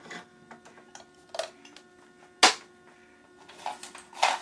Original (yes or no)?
yes